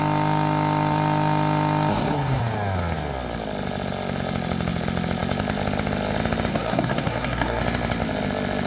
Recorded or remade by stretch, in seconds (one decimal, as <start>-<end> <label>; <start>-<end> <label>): 0.0-1.9 recorded; 1.9-2.4 remade; 2.4-6.5 recorded; 6.5-7.6 remade; 7.6-8.7 recorded